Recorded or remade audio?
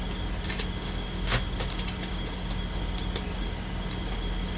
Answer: recorded